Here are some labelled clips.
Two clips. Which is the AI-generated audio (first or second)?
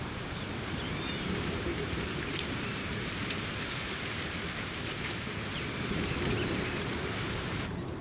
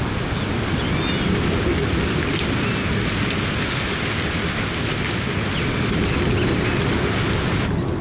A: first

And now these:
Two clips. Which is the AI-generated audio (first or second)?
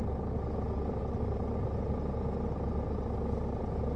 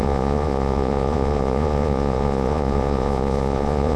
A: second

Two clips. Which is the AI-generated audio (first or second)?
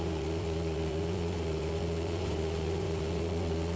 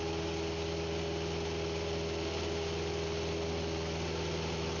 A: first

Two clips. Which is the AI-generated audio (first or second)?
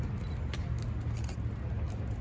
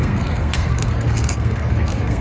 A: second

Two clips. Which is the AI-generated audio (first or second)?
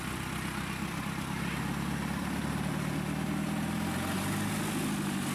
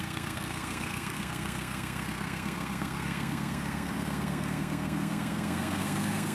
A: second